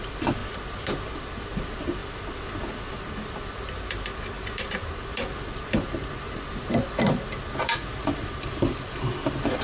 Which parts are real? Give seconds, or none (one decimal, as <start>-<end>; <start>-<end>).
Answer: 0.4-1.1; 2.0-3.5